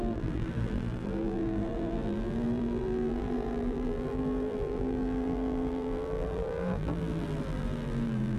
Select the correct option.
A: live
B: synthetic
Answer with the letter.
B